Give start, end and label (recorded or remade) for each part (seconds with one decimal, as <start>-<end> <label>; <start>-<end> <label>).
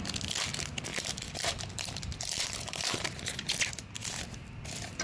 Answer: 0.0-0.9 recorded; 0.9-3.5 remade; 3.5-5.0 recorded